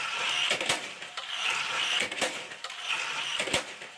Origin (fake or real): real